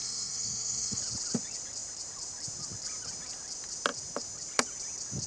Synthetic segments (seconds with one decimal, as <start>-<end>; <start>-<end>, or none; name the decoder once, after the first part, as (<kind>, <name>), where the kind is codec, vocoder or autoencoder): 0.0-1.0 (codec, SNAC)